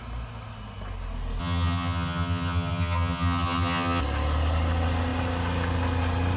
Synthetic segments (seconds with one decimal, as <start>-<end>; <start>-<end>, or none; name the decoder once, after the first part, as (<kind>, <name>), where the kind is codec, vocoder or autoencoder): 1.4-4.0 (vocoder, HiFi-GAN)